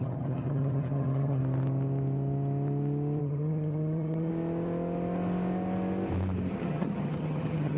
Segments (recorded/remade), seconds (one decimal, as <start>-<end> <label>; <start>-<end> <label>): 0.0-1.4 remade; 1.4-3.2 recorded; 3.2-4.3 remade; 4.3-6.5 recorded; 6.5-7.8 remade